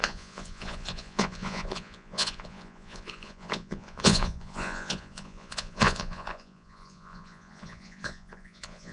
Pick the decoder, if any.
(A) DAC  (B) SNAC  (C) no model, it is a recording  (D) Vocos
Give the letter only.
D